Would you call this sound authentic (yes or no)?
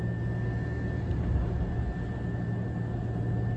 yes